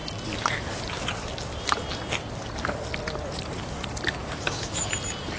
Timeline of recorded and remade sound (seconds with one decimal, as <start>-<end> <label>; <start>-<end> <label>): 0.0-4.2 recorded; 4.2-4.9 remade; 4.9-5.4 recorded